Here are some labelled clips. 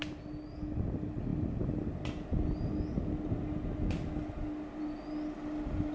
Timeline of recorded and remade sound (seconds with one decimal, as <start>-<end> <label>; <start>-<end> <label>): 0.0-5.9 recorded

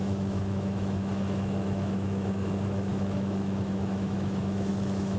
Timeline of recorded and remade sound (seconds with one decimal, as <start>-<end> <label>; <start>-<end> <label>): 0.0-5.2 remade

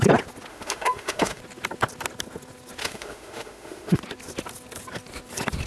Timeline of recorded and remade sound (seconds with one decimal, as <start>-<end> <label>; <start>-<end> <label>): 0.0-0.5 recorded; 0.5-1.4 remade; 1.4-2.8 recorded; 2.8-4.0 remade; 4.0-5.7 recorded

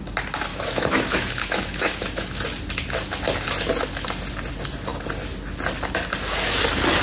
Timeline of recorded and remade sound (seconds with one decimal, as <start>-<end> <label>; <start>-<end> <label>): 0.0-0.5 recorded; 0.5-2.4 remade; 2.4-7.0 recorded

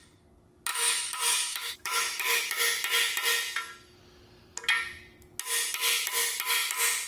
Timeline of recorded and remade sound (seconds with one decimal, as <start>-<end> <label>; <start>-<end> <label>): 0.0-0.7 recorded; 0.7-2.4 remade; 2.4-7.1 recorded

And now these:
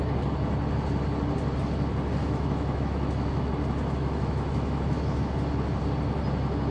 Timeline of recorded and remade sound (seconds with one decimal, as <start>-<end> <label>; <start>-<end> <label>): 0.0-2.2 recorded; 2.2-3.5 remade; 3.5-4.0 recorded; 4.0-5.2 remade; 5.2-6.7 recorded

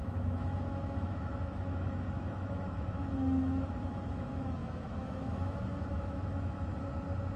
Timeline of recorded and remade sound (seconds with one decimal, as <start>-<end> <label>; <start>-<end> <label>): 0.0-6.7 remade; 6.7-7.4 recorded

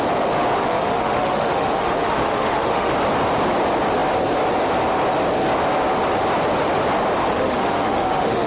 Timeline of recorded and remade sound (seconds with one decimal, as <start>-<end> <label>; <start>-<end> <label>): 0.0-0.6 recorded; 0.6-2.9 remade; 2.9-7.3 recorded; 7.3-8.5 remade